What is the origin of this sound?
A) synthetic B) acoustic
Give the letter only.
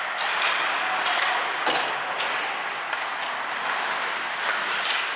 B